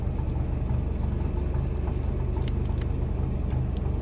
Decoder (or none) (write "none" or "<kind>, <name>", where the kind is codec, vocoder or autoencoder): none